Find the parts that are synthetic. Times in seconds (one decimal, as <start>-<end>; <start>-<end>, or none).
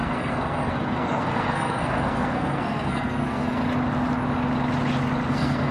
0.0-3.6; 5.3-5.7